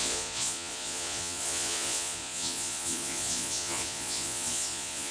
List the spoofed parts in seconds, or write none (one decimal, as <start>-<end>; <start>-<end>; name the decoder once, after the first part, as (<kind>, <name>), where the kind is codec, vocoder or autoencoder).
0.0-5.1 (vocoder, Vocos)